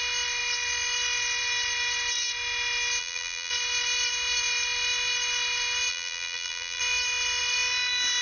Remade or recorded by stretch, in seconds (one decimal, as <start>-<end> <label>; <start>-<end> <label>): 0.0-3.0 recorded; 3.0-3.5 remade; 3.5-5.9 recorded; 5.9-6.8 remade; 6.8-8.2 recorded